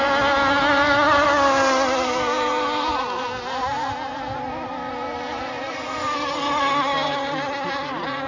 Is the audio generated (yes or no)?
no